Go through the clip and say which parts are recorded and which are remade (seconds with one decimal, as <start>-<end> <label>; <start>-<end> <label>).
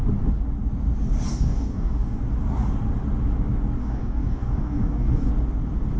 0.0-1.3 recorded; 1.3-2.2 remade; 2.2-3.8 recorded; 3.8-5.3 remade; 5.3-6.0 recorded